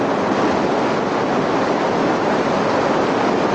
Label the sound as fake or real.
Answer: real